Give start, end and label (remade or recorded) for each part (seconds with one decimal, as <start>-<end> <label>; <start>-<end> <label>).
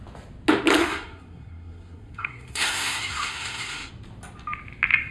0.0-0.8 recorded; 0.8-3.9 remade; 3.9-5.1 recorded